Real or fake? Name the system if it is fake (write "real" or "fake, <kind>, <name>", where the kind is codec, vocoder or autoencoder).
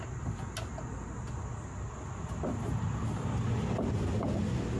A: real